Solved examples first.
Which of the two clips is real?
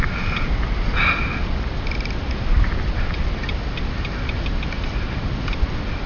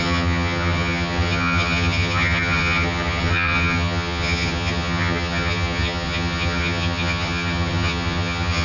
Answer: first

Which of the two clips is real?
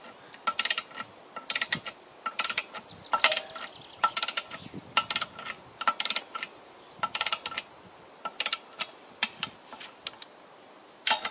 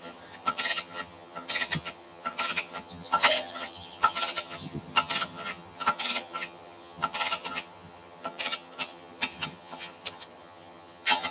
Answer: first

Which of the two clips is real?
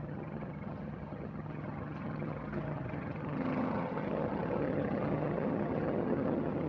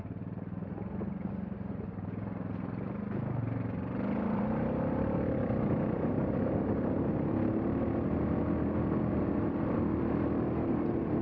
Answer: second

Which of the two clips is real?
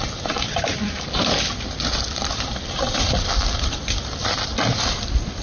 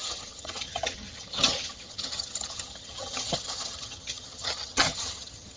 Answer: first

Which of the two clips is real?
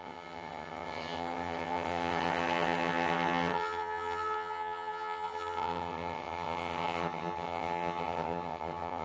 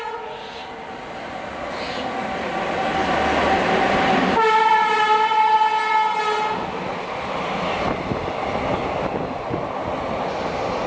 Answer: second